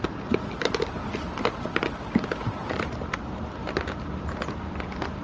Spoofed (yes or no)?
no